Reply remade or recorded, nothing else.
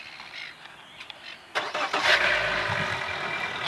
recorded